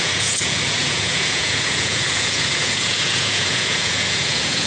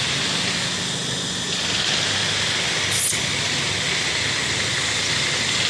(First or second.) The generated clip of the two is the first